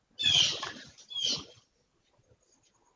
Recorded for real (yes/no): yes